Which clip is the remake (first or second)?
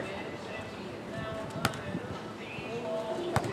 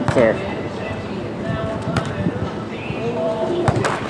second